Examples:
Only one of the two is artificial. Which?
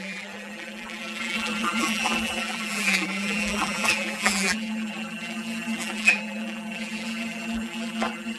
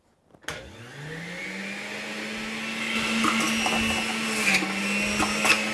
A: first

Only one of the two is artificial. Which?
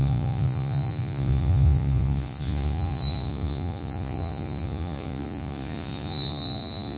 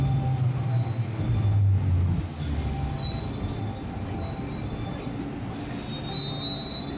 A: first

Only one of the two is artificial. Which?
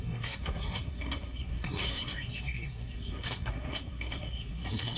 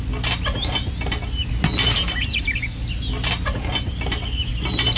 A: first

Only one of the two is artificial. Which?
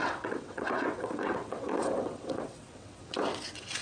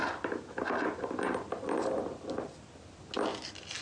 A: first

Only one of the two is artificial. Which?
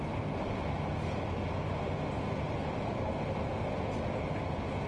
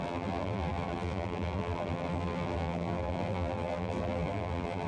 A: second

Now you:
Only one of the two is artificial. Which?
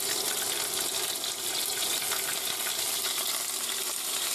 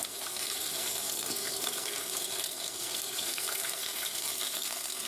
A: second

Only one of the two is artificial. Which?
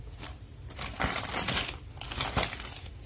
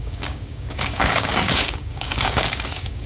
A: second